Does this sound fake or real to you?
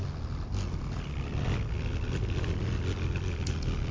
real